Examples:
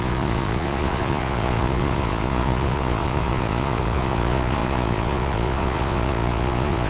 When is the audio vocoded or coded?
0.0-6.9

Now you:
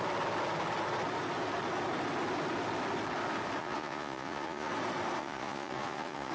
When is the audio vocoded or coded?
3.6-4.7; 5.2-6.3

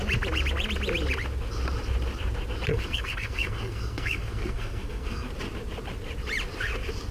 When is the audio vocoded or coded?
2.7-5.3

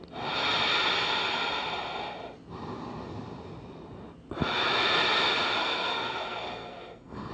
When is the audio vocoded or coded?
5.6-7.3

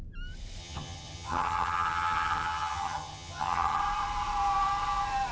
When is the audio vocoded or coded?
0.6-3.8